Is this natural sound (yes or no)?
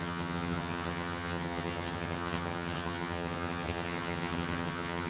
no